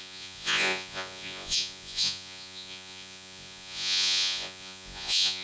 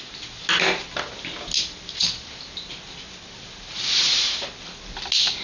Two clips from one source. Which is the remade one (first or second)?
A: first